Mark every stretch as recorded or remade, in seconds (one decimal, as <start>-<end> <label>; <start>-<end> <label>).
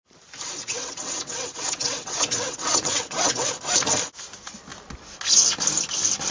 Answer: 0.0-0.6 recorded; 0.6-3.5 remade; 3.5-6.3 recorded